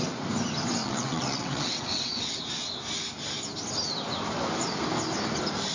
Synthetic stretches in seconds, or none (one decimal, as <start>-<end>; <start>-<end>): 0.8-2.4

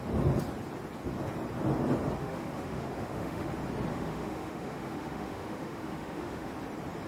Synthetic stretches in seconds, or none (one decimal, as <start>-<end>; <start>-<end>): 2.2-3.5; 3.9-6.5

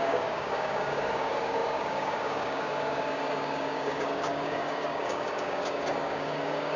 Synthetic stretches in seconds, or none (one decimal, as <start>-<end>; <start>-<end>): 0.0-6.8